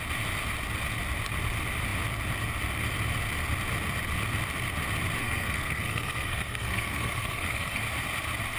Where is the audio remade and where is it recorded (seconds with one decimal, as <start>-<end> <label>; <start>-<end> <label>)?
0.0-5.2 recorded; 5.2-7.8 remade; 7.8-8.6 recorded